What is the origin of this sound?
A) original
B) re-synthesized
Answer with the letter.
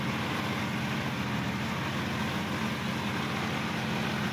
A